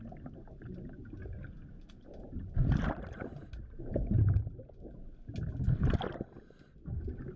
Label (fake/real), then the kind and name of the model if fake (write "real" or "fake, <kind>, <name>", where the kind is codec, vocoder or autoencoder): real